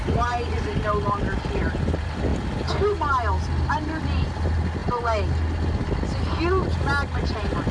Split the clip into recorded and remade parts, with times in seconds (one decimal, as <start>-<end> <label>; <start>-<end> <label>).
0.0-7.7 recorded